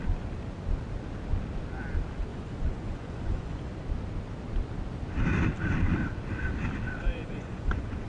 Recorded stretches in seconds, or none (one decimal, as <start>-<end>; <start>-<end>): 0.0-2.3; 3.7-7.0